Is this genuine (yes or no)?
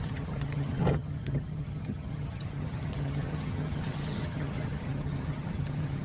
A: no